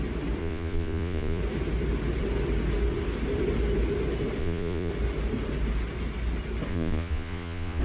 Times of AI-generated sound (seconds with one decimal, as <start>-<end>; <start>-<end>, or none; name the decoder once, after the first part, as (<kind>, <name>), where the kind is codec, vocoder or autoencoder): 0.4-1.4 (vocoder, Vocos); 4.4-4.9; 6.7-7.8